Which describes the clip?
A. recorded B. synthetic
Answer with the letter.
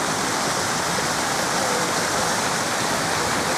A